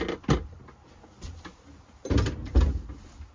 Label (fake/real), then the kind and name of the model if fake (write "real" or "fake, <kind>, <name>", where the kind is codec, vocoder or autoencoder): real